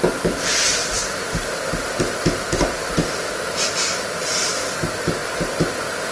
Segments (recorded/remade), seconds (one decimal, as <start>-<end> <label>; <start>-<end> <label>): 0.0-6.1 recorded